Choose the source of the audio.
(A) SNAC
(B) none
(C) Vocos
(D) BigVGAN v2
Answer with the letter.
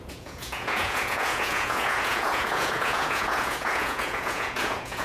C